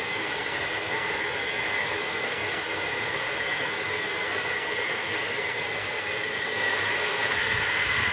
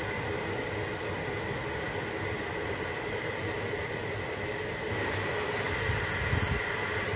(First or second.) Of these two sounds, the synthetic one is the first